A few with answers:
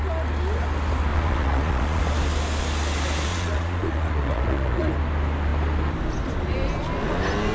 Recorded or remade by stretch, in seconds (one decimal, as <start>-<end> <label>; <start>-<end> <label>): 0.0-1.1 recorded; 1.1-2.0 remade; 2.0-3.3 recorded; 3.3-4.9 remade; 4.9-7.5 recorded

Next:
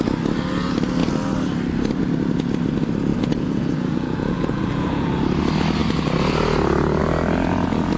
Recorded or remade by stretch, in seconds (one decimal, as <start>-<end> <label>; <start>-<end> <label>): 0.0-3.1 recorded; 3.1-5.1 remade; 5.1-8.0 recorded

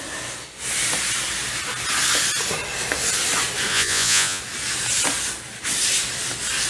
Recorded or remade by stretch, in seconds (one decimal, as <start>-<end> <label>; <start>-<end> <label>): 0.0-3.7 recorded; 3.7-4.4 remade; 4.4-6.7 recorded